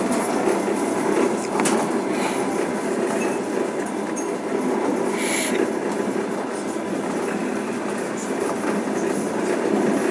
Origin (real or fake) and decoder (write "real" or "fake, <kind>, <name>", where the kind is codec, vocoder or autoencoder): real